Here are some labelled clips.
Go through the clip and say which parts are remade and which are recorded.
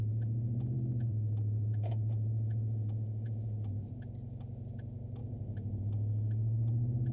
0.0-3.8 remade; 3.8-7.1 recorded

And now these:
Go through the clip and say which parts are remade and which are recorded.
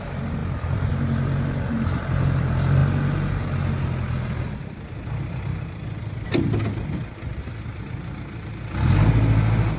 0.0-9.8 recorded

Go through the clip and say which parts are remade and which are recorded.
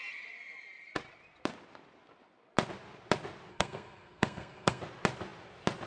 0.0-3.5 recorded; 3.5-4.8 remade; 4.8-5.9 recorded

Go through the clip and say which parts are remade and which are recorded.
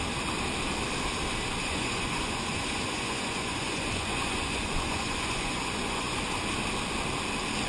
0.0-1.6 recorded; 1.6-6.2 remade; 6.2-7.7 recorded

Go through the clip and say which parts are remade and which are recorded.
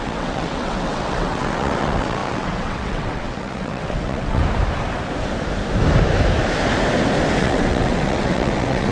0.0-4.4 remade; 4.4-7.4 recorded; 7.4-8.9 remade